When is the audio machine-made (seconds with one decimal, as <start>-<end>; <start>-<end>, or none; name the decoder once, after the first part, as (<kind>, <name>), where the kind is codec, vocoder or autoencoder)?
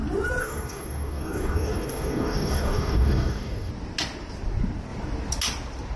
0.4-3.7 (codec, DAC)